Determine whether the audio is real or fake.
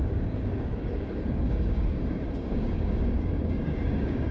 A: fake